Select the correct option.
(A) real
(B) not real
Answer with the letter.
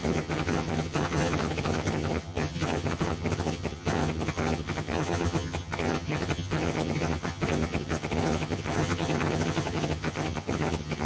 B